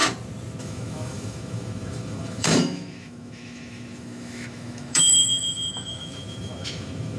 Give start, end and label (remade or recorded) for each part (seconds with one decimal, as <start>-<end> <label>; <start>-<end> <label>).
0.0-0.6 recorded; 0.6-7.2 remade

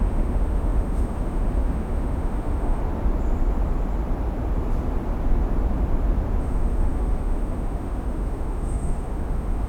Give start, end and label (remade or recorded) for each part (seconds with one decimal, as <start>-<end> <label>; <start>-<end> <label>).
0.0-2.8 remade; 2.8-6.4 recorded; 6.4-9.7 remade